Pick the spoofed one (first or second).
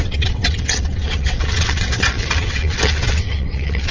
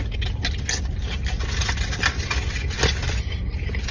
first